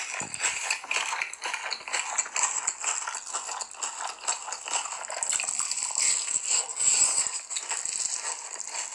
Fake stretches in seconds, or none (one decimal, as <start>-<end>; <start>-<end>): none